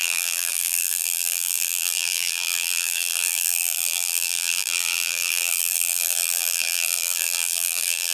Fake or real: fake